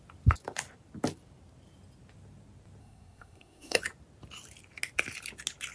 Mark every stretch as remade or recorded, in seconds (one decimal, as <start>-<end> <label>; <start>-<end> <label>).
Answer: 0.0-2.8 recorded; 2.8-3.8 remade; 3.8-5.7 recorded